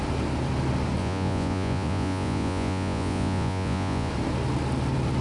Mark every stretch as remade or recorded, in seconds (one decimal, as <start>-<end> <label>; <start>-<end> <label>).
0.0-1.0 recorded; 1.0-4.1 remade; 4.1-5.2 recorded

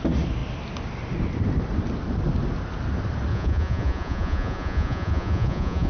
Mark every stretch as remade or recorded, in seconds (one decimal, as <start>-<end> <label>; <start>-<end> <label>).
0.0-3.3 recorded; 3.3-5.9 remade

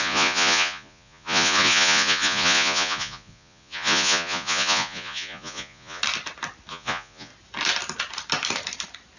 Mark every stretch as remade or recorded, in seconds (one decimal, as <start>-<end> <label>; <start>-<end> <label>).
0.0-6.0 remade; 6.0-6.7 recorded; 6.7-7.3 remade; 7.3-9.2 recorded

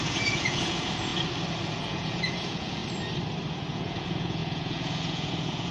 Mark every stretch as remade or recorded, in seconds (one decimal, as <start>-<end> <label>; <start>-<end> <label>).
0.0-1.1 remade; 1.1-1.6 recorded; 1.6-2.8 remade; 2.8-3.5 recorded; 3.5-5.7 remade

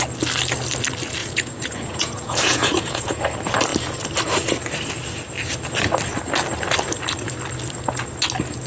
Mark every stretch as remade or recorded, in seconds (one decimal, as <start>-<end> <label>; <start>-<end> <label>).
0.0-1.2 recorded; 1.2-3.2 remade; 3.2-8.7 recorded